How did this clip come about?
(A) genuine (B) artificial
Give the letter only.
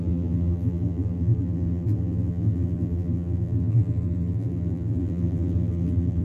B